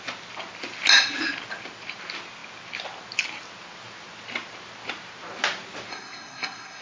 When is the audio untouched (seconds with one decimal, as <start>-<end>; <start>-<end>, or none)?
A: 0.0-5.9